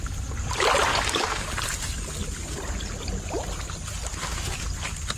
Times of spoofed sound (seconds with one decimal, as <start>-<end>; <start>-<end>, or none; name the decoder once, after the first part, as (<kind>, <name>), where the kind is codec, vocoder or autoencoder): 0.9-1.5 (codec, DAC)

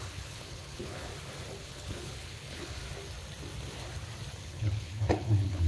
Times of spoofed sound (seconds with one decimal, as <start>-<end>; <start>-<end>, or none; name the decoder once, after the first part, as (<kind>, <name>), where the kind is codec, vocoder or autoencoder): 0.0-1.1 (codec, HILCodec); 1.6-2.8; 4.4-5.7

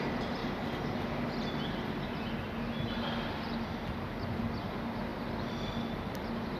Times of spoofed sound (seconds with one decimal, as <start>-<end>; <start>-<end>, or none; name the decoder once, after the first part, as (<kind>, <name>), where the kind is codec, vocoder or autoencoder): none

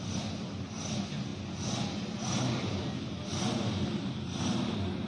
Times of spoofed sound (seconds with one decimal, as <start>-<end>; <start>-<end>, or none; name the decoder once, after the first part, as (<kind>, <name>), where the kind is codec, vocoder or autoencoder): none

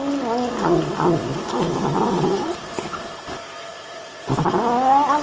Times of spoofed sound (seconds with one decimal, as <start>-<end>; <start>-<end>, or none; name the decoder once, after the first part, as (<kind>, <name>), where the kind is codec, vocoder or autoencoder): 3.7-4.5 (vocoder, Vocos)